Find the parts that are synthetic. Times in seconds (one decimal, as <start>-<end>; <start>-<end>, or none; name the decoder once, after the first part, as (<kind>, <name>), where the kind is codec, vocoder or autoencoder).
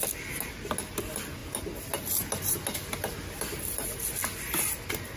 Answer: none